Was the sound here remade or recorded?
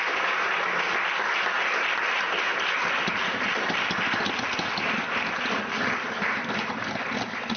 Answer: recorded